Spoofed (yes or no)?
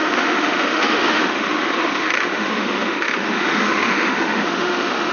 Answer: yes